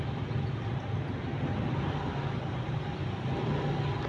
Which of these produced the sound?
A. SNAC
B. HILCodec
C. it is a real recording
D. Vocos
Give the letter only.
C